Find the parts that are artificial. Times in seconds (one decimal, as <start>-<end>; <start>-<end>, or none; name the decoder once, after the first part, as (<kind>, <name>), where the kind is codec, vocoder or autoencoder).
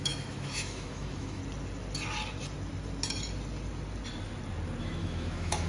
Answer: 0.0-1.4 (autoencoder, DAC-VAE); 4.8-5.7